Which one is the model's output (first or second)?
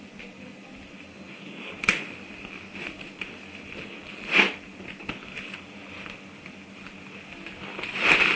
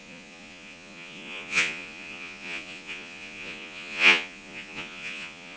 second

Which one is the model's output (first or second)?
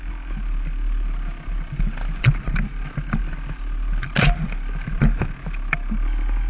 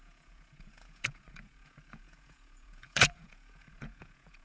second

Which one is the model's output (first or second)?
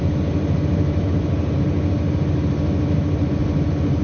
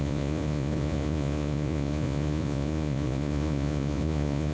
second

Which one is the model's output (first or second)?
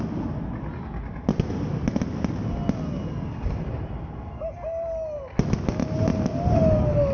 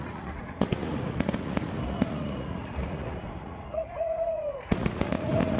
second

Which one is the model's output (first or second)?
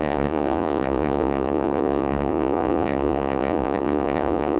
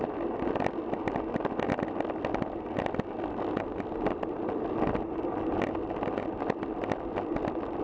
first